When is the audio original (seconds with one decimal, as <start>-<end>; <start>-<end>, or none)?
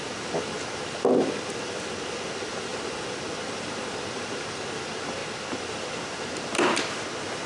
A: 0.0-7.5